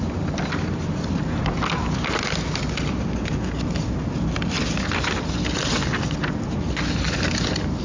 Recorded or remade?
recorded